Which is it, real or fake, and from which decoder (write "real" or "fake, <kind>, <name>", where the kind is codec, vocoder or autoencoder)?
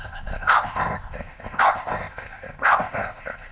fake, codec, ZipCodec